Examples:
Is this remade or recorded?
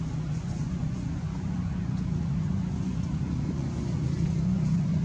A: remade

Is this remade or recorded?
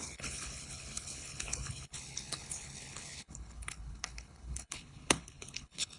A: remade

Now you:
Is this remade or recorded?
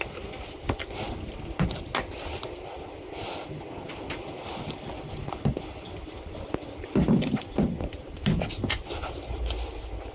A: recorded